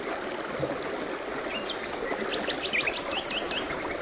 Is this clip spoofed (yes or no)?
no